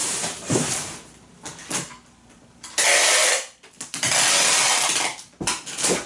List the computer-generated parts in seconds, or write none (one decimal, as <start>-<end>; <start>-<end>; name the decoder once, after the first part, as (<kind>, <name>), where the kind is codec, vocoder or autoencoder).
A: 0.0-0.7 (vocoder, BigVGAN v2)